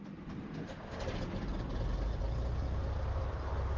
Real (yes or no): yes